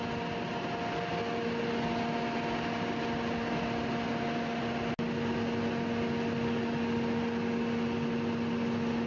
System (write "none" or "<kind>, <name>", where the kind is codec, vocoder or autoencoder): none